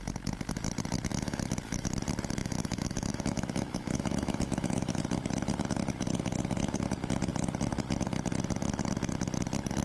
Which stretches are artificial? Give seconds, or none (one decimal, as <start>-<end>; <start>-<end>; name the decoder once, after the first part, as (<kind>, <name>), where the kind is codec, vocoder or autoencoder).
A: 1.1-1.9 (autoencoder, DAC-VAE); 2.4-5.0